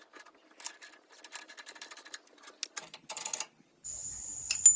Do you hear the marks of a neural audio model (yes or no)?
no